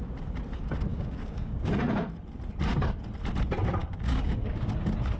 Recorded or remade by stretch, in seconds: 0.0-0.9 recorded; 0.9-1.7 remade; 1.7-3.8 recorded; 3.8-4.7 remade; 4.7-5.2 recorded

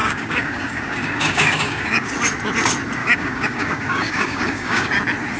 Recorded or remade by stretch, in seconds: 0.0-2.1 remade; 2.1-3.0 recorded; 3.0-5.0 remade; 5.0-5.4 recorded

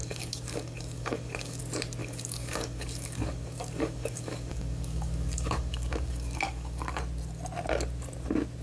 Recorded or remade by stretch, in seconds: 0.0-1.6 remade; 1.6-2.0 recorded; 2.0-7.0 remade; 7.0-8.6 recorded

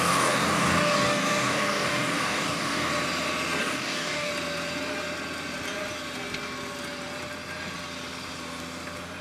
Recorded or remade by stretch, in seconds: 0.0-2.9 remade; 2.9-3.6 recorded; 3.6-4.3 remade; 4.3-9.2 recorded

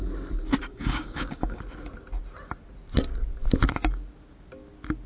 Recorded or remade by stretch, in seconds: 0.0-0.7 recorded; 0.7-1.6 remade; 1.6-5.1 recorded

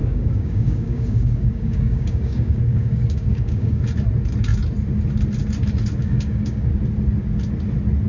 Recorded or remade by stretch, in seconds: 0.0-3.8 remade; 3.8-6.0 recorded; 6.0-6.7 remade; 6.7-8.1 recorded